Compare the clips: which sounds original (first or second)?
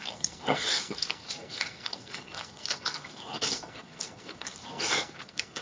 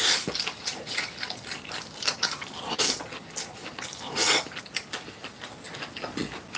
second